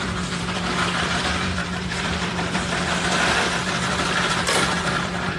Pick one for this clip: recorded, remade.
remade